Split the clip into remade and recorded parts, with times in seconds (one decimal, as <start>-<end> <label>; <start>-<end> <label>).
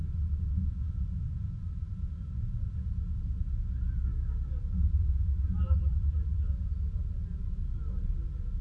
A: 0.0-3.2 remade; 3.2-8.6 recorded